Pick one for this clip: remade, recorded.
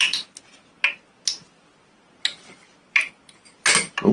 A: recorded